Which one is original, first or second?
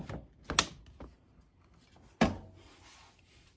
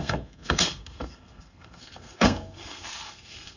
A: first